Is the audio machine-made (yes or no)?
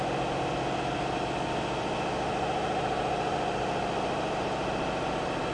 no